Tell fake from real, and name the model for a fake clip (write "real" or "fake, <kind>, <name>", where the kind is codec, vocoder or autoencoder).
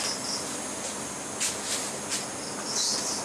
real